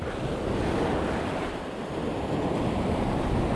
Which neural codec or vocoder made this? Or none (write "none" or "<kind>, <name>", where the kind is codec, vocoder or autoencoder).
none